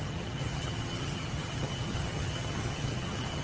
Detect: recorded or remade remade